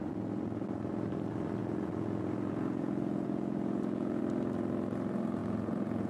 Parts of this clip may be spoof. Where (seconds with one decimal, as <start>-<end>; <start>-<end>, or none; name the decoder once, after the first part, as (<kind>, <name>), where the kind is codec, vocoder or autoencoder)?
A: 1.6-4.2 (vocoder, Vocos); 5.4-6.1